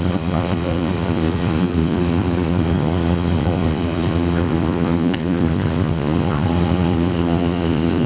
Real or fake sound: fake